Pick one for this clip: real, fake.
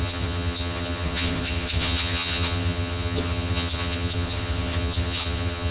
fake